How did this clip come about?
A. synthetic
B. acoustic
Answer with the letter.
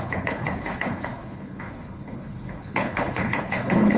A